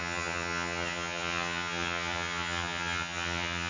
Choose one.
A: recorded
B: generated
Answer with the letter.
B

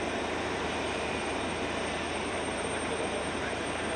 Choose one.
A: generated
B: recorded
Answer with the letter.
A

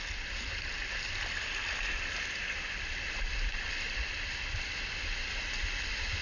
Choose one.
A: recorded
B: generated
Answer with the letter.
A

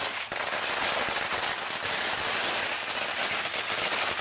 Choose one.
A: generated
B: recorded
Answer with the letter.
B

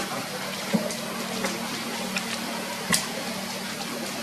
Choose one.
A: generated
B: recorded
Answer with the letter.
B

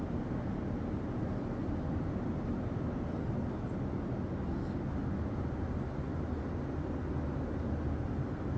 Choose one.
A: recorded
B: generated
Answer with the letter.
A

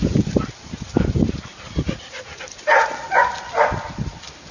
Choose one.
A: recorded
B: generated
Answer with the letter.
A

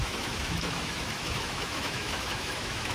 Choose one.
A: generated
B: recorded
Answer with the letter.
A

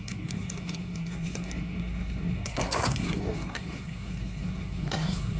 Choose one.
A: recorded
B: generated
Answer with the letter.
B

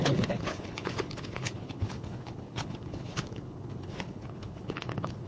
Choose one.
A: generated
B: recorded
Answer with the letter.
A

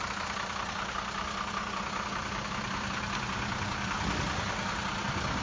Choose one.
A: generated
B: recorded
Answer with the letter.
B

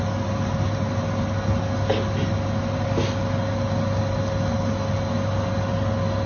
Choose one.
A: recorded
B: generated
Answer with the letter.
A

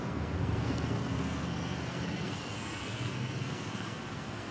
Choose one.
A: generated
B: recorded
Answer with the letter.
A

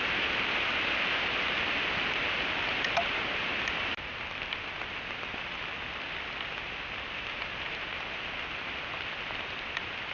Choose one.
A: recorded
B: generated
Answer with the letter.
A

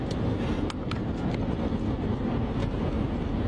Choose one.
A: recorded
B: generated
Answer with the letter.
A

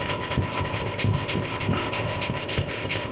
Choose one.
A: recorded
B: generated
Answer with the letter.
B